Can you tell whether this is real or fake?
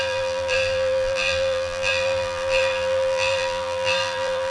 fake